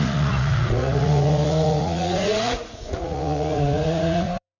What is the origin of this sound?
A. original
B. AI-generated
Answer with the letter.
B